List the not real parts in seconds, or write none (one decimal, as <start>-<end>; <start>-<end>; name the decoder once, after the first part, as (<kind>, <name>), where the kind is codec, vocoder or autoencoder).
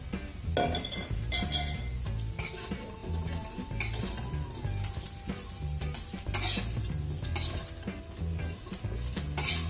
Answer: none